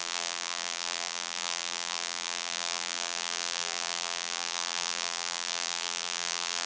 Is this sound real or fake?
fake